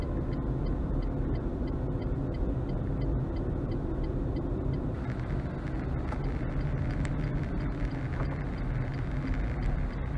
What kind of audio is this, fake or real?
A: real